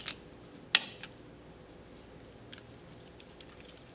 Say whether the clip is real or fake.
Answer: real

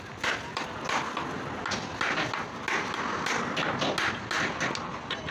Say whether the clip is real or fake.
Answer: real